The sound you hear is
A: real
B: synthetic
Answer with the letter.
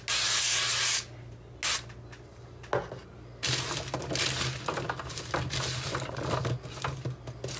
A